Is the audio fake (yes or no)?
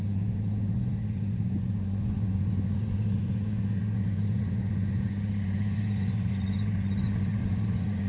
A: yes